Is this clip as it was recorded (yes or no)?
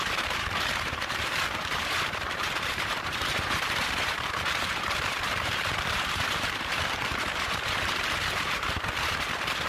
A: no